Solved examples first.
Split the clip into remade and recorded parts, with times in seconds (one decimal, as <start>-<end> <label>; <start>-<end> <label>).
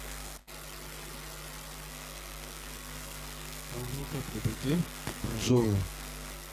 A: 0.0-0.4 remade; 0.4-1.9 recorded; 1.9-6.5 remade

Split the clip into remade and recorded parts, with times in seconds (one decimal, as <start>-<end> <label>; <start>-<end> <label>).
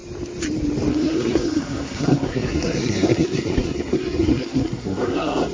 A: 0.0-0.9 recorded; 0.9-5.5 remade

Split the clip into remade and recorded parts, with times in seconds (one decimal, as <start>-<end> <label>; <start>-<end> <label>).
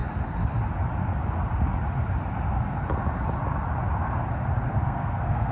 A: 0.0-4.7 recorded; 4.7-5.5 remade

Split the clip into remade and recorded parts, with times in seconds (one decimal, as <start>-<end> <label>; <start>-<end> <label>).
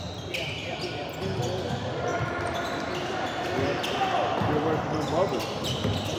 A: 0.0-6.2 recorded